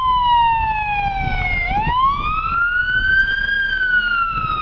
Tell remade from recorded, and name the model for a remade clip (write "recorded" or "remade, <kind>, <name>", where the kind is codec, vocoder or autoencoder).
recorded